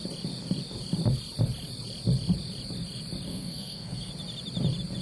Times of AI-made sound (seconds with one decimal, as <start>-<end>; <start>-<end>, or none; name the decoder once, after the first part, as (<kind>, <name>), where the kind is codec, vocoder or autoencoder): 3.3-4.1 (codec, SNAC)